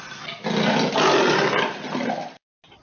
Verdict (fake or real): real